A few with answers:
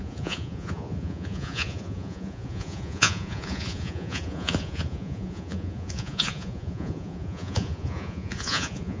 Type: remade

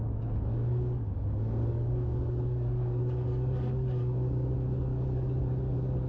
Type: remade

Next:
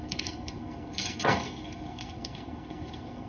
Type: remade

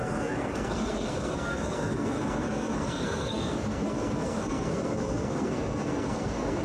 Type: remade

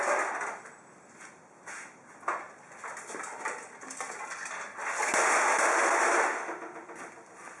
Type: recorded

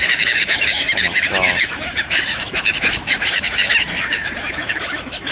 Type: remade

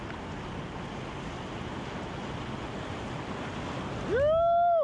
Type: recorded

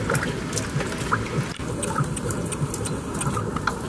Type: recorded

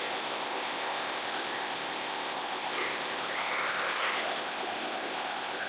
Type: remade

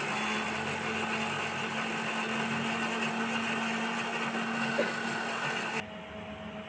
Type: recorded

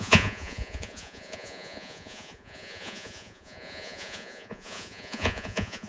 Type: remade